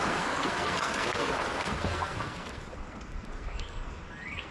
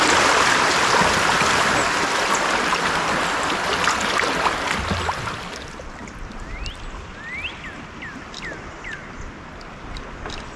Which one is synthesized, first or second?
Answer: first